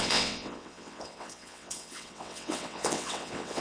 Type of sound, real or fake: fake